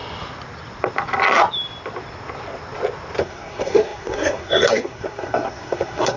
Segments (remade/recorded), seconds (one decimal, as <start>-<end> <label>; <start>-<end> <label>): 0.0-3.2 recorded; 3.2-6.2 remade